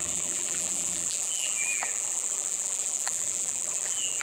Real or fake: fake